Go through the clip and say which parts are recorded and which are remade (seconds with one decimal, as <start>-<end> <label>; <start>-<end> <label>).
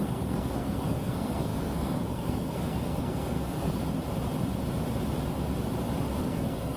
0.0-3.8 remade; 3.8-6.2 recorded; 6.2-6.8 remade